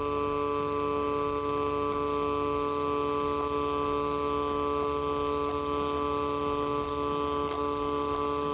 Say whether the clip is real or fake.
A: real